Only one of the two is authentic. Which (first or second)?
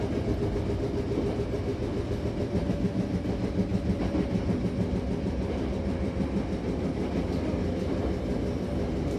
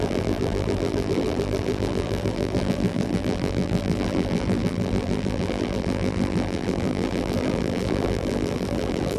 first